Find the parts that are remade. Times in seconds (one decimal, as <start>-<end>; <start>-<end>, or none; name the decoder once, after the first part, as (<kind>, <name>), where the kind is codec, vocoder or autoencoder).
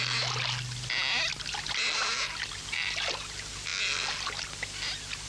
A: none